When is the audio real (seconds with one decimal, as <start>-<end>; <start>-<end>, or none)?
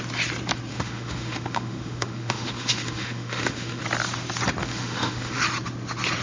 0.0-0.7; 3.8-4.6; 5.4-6.2